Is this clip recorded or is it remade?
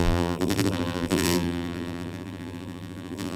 remade